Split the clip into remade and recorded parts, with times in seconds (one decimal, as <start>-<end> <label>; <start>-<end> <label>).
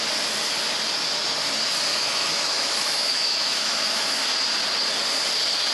0.0-1.9 recorded; 1.9-4.2 remade; 4.2-5.7 recorded